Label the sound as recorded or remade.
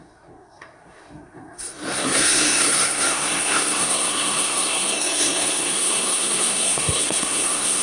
remade